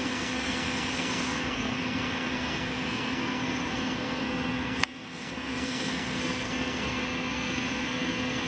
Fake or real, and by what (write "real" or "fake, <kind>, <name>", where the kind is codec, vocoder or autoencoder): fake, codec, SNAC